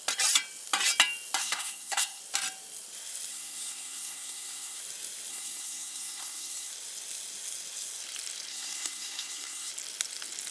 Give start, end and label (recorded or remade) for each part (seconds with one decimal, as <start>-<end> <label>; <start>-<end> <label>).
0.0-1.4 recorded; 1.4-2.2 remade; 2.2-3.3 recorded; 3.3-4.8 remade; 4.8-5.3 recorded; 5.3-6.7 remade; 6.7-8.5 recorded; 8.5-9.7 remade; 9.7-10.5 recorded